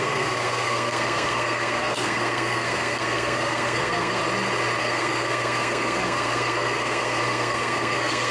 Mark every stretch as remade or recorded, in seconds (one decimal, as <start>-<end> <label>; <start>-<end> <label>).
0.0-4.2 remade; 4.2-4.8 recorded; 4.8-8.3 remade